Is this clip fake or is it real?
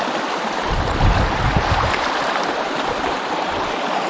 fake